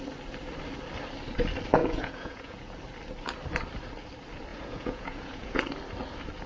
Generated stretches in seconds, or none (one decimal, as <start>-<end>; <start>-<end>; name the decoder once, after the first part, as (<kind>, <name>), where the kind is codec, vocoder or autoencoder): 1.8-2.8 (vocoder, Vocos); 4.5-5.6